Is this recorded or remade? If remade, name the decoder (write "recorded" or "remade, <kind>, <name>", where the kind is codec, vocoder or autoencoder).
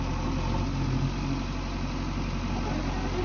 recorded